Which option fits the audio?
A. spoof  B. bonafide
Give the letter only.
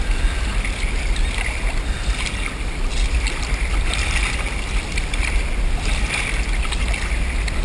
B